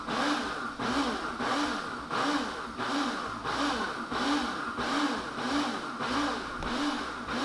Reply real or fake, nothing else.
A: real